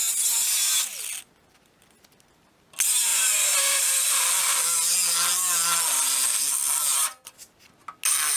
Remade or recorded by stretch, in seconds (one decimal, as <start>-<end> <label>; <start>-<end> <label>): 0.0-3.1 recorded; 3.1-3.9 remade; 3.9-8.4 recorded